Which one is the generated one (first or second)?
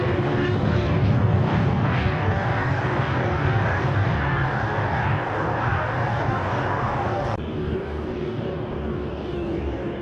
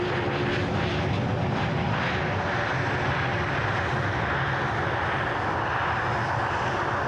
first